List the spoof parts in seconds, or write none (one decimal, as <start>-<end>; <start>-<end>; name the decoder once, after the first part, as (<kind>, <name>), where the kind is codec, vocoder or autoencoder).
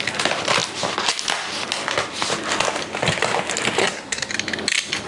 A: 3.8-4.3 (codec, SNAC)